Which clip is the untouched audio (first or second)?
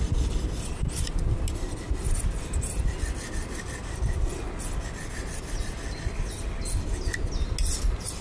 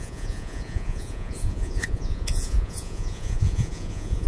first